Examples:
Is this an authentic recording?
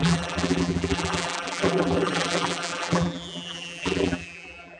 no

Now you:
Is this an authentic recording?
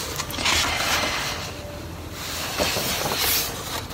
yes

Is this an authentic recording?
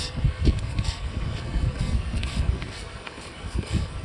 no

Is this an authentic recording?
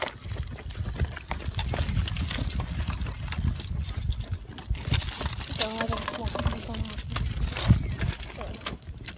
yes